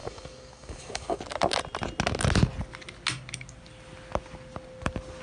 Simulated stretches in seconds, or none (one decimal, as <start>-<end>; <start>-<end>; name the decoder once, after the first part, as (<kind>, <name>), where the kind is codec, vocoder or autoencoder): 0.0-1.2 (codec, DAC)